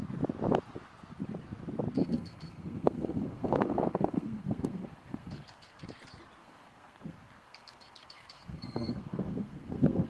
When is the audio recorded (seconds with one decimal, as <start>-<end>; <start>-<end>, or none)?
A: 0.0-2.0; 5.8-6.4